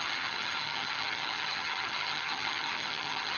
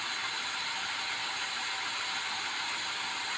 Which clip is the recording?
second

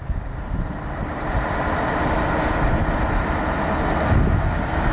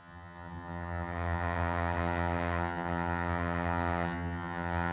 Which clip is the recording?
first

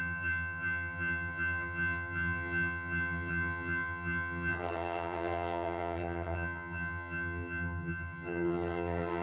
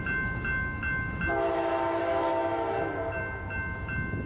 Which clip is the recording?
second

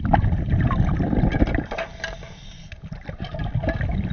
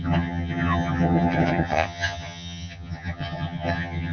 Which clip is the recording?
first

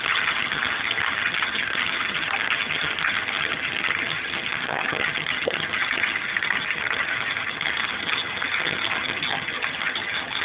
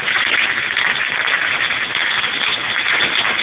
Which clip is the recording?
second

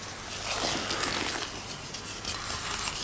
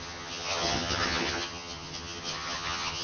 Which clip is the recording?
first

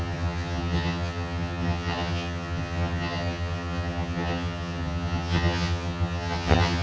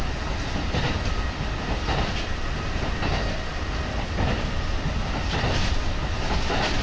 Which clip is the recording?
second